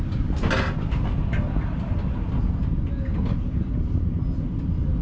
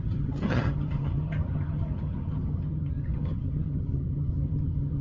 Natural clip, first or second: first